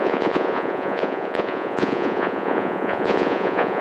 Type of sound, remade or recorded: remade